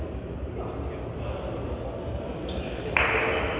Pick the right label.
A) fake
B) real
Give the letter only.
B